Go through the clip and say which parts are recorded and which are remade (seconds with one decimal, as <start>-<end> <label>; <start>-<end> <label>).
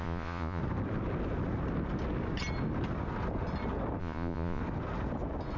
0.0-0.6 remade; 0.6-4.0 recorded; 4.0-4.6 remade; 4.6-5.6 recorded